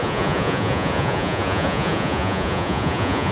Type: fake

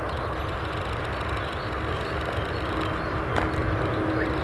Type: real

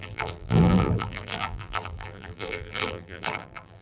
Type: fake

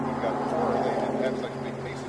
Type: real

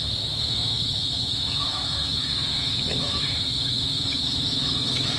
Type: fake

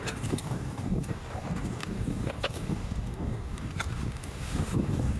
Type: fake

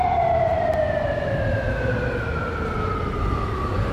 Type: real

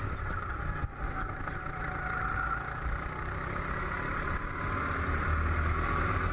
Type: real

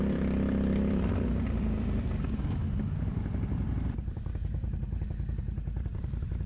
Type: fake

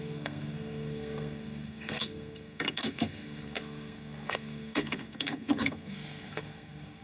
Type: fake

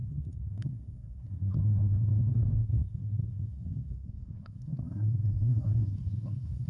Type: fake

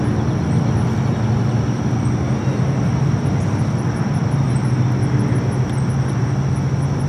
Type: real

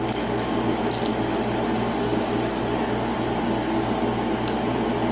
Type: real